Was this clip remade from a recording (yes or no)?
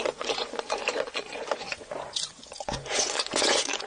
yes